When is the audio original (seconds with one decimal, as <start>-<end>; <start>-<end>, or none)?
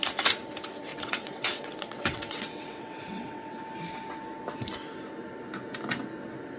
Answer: 0.0-0.9; 3.6-6.6